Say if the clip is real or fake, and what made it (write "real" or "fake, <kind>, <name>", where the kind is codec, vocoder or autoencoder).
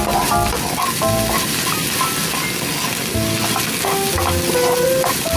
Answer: real